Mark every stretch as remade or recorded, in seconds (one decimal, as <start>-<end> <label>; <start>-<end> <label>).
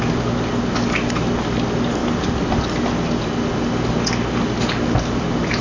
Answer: 0.0-2.0 recorded; 2.0-4.1 remade; 4.1-5.6 recorded